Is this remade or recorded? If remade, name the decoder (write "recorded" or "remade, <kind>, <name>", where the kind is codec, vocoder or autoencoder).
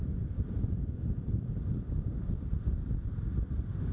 remade, vocoder, BigVGAN v2